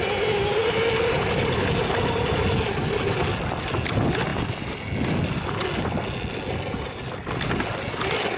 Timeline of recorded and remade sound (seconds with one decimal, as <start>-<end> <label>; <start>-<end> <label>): 0.0-8.4 recorded